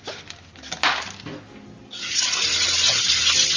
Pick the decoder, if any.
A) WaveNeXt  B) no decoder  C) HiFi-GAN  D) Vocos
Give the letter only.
B